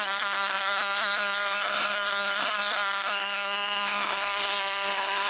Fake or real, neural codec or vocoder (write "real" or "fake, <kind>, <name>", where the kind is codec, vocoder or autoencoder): fake, codec, SNAC